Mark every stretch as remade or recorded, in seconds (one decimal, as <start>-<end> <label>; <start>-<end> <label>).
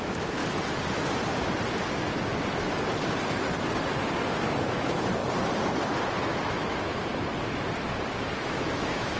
0.0-0.4 remade; 0.4-4.3 recorded; 4.3-5.2 remade; 5.2-6.2 recorded; 6.2-7.1 remade; 7.1-8.4 recorded; 8.4-9.2 remade